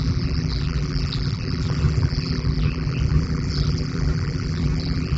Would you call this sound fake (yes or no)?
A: yes